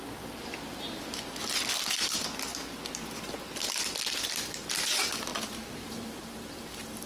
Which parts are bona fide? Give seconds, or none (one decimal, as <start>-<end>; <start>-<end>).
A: 0.0-5.3